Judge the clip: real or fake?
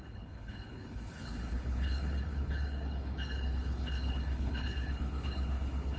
fake